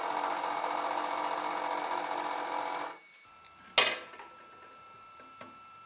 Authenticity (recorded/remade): recorded